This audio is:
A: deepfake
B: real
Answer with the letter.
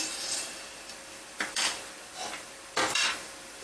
A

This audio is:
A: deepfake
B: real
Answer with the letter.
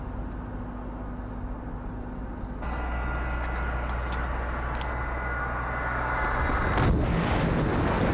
B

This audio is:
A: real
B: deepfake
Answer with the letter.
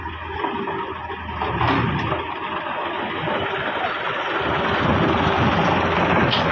A